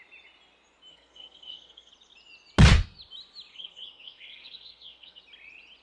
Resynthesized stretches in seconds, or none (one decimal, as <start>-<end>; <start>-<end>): 0.9-1.9; 3.5-5.2